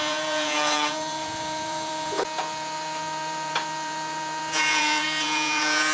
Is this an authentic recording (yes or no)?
no